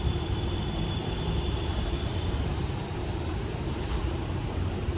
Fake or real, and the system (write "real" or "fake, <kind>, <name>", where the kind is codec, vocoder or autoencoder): fake, vocoder, BigVGAN v2